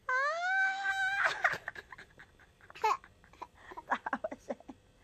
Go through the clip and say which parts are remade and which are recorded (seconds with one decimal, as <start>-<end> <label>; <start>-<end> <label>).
0.0-0.9 remade; 0.9-5.0 recorded

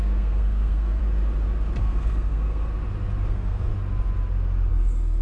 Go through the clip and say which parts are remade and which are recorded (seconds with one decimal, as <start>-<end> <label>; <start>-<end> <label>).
0.0-1.0 remade; 1.0-1.8 recorded; 1.8-2.7 remade; 2.7-3.3 recorded; 3.3-3.7 remade; 3.7-4.7 recorded; 4.7-5.2 remade

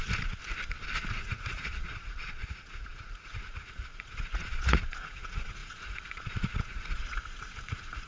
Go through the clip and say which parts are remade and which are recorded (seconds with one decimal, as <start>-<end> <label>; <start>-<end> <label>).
0.0-0.4 remade; 0.4-1.1 recorded; 1.1-8.1 remade

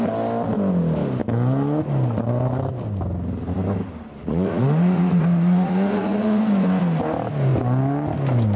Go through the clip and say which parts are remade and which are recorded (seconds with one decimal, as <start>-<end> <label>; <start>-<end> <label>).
0.0-4.2 recorded; 4.2-6.4 remade; 6.4-8.6 recorded

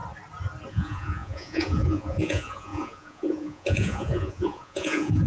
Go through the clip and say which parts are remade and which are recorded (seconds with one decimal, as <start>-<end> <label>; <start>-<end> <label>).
0.0-0.7 recorded; 0.7-5.3 remade

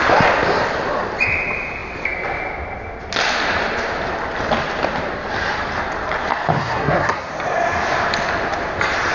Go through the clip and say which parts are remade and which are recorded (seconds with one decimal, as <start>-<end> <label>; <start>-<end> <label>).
0.0-6.6 recorded; 6.6-7.3 remade; 7.3-9.1 recorded